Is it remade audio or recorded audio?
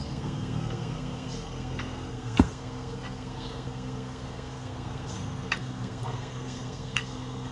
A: remade